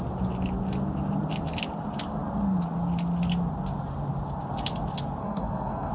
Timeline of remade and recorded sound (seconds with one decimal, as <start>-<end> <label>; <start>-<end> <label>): 0.0-5.2 recorded; 5.2-5.9 remade